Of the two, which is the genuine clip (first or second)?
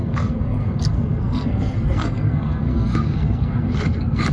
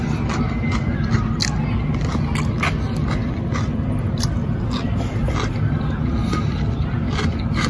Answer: second